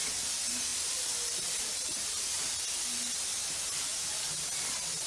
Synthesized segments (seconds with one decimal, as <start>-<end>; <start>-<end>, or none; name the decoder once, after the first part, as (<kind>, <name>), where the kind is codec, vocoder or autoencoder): 0.7-2.5 (vocoder, BigVGAN v2)